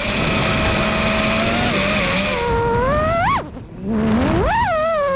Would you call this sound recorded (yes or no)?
yes